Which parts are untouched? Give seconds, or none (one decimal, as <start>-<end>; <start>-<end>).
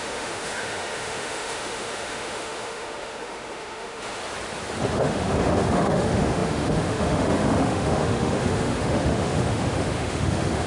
4.2-4.9